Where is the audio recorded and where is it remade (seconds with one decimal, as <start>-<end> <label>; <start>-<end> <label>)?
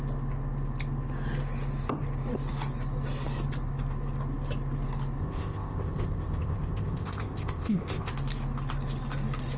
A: 0.0-5.2 recorded; 5.2-8.1 remade; 8.1-9.6 recorded